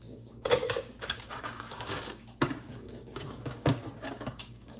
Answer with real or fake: fake